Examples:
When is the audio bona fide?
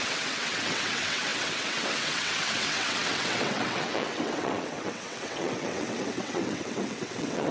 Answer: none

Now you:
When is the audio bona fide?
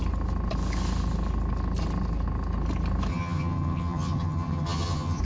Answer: 0.0-3.1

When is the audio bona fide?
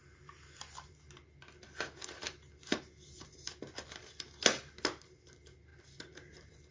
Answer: 0.0-6.7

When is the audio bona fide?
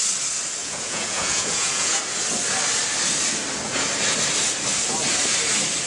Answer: 0.0-0.6; 2.0-5.9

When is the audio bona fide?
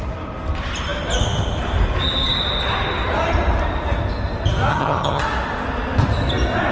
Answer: 0.0-4.7; 5.2-6.7